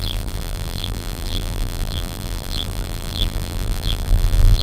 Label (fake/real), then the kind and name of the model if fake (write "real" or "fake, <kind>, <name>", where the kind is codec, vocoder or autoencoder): fake, vocoder, BigVGAN v2